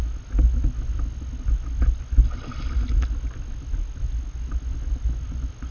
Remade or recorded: recorded